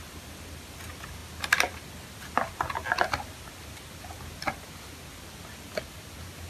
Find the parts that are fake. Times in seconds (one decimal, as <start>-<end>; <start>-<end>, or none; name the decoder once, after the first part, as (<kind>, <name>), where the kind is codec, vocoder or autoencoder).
none

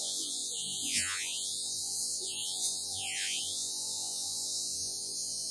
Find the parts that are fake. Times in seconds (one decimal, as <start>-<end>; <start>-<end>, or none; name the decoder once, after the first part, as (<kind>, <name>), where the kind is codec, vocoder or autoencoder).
0.0-5.5 (vocoder, Vocos)

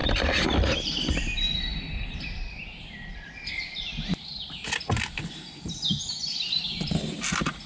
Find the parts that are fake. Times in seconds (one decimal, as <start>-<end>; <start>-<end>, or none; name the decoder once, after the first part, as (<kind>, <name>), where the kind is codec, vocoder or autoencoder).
none

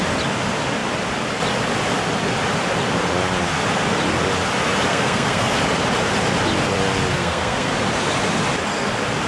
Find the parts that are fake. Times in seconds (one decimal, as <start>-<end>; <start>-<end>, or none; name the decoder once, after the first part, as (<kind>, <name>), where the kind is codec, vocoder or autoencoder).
4.9-5.6 (codec, SNAC); 7.1-7.7

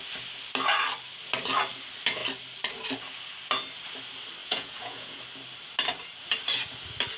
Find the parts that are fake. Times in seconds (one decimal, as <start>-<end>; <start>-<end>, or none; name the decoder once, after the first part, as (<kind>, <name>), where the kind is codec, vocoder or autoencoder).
4.4-5.2 (vocoder, Vocos)

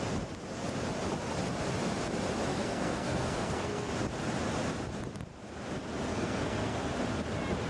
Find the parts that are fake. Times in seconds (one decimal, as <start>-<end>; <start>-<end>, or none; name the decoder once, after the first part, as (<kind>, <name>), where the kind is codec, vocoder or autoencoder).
2.5-3.9 (codec, SNAC); 6.1-6.8

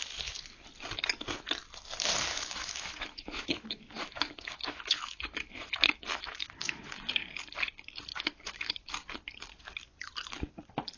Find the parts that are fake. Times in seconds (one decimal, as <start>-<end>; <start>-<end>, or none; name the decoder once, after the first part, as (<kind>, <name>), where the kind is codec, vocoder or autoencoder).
2.3-7.0 (autoencoder, DAC-VAE); 8.1-8.9

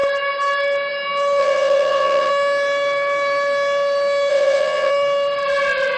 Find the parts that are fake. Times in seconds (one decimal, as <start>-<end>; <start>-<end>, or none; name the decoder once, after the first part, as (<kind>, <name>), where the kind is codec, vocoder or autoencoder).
1.4-2.3 (vocoder, WaveNeXt); 4.3-4.9